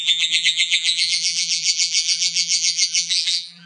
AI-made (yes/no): yes